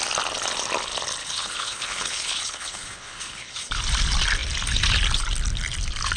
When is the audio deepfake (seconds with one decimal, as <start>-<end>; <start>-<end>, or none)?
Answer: 1.2-3.7